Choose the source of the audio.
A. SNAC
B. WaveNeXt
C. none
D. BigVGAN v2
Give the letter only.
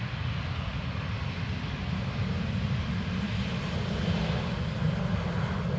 C